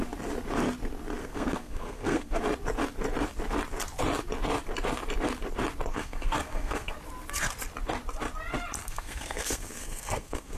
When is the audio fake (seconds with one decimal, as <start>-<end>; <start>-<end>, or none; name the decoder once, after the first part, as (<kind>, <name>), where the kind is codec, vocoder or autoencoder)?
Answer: 1.2-2.4 (codec, SNAC); 5.9-6.9; 8.8-10.6